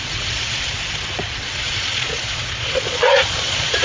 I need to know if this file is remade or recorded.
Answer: remade